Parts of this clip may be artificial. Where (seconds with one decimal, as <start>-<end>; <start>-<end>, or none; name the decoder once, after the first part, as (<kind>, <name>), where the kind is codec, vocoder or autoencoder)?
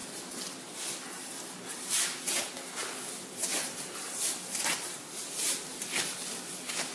none